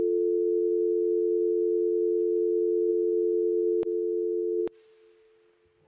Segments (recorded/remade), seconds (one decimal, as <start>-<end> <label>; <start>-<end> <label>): 0.0-2.9 recorded; 2.9-4.6 remade; 4.6-5.9 recorded